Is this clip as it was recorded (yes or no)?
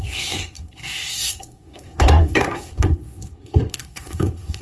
no